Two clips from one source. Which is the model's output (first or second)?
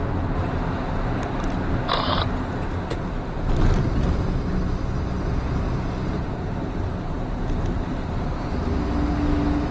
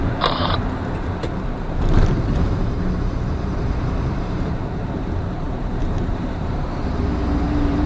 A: second